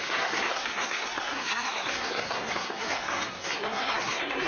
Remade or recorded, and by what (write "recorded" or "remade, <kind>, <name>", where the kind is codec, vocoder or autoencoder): remade, codec, SNAC